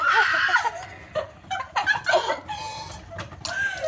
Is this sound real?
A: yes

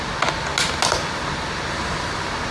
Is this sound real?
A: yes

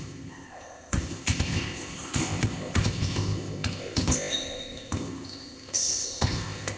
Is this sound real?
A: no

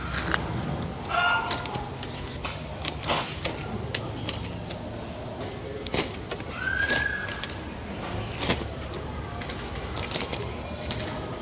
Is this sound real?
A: yes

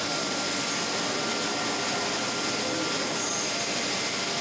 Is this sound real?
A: yes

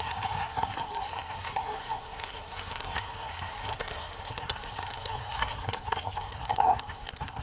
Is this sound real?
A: no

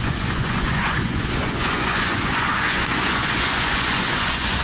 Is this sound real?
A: no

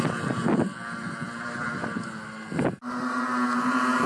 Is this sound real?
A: no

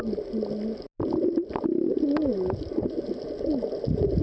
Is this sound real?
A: yes